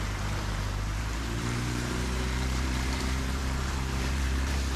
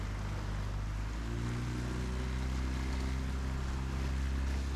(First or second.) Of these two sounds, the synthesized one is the first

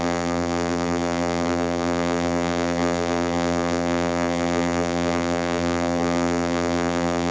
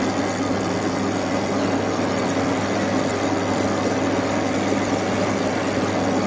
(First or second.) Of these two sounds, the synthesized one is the first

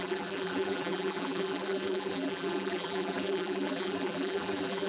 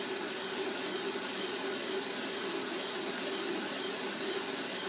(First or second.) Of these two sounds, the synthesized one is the first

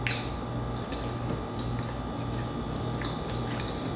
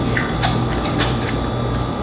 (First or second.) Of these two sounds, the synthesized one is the second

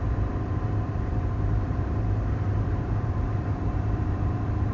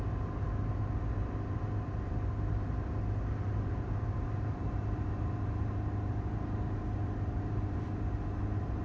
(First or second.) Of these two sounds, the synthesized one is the first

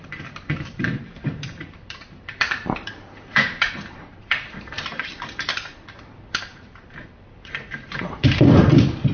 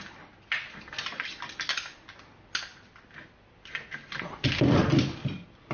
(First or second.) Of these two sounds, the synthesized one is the first